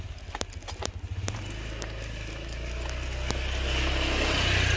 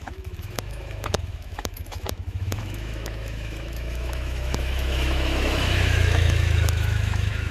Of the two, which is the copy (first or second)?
second